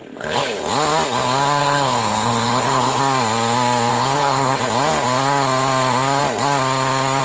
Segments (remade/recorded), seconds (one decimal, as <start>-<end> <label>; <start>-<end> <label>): 0.0-0.6 remade; 0.6-1.6 recorded; 1.6-3.0 remade; 3.0-3.9 recorded; 3.9-4.6 remade; 4.6-7.2 recorded